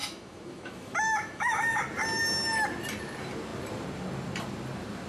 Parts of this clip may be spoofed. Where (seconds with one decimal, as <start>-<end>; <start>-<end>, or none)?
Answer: 0.0-1.8